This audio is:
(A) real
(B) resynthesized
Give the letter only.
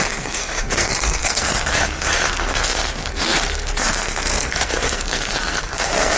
B